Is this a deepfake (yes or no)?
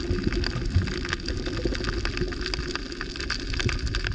no